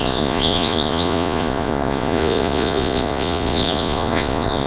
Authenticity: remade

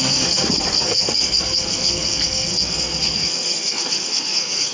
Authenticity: remade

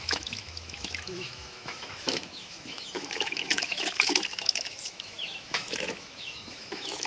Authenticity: remade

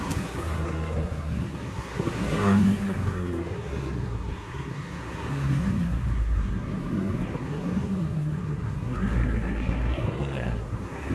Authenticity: remade